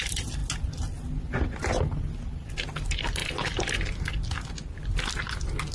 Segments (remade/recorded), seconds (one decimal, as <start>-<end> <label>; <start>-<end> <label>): 0.0-5.7 recorded